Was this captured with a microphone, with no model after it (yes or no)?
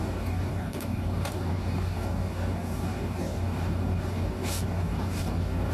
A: no